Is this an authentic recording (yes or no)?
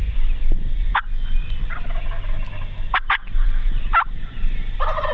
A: yes